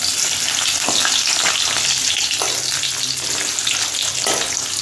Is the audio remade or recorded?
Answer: recorded